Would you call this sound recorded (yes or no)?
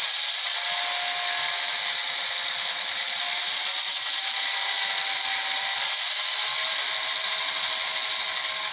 yes